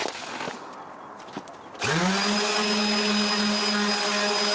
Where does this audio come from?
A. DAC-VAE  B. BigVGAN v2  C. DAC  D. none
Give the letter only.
D